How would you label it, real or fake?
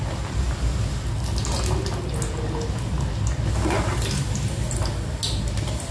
real